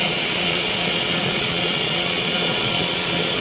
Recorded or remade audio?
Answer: remade